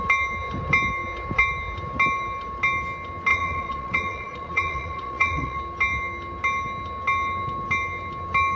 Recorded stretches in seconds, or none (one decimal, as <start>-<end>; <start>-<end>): 0.0-3.3; 5.6-8.6